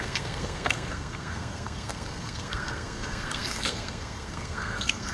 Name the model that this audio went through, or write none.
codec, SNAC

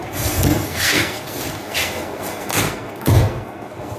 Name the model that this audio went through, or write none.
codec, SNAC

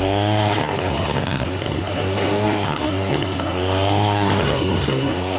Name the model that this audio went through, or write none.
codec, SNAC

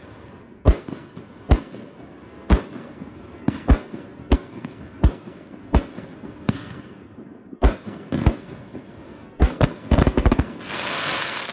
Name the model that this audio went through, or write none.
codec, SNAC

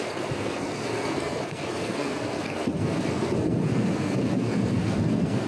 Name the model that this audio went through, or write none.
codec, SNAC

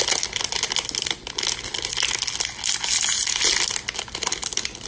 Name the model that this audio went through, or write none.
none